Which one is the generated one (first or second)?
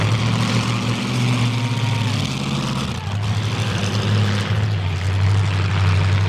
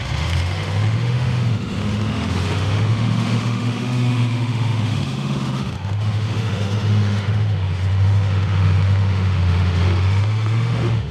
second